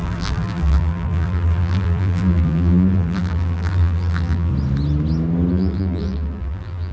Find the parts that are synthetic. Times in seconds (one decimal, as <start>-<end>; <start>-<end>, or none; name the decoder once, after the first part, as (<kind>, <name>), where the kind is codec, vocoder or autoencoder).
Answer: 0.0-4.5 (vocoder, BigVGAN v2); 5.5-6.9